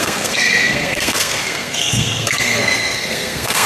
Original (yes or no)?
no